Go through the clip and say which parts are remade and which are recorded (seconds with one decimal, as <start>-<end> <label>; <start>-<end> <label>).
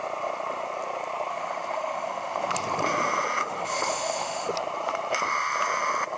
0.0-1.3 recorded; 1.3-2.5 remade; 2.5-3.4 recorded; 3.4-4.5 remade; 4.5-6.2 recorded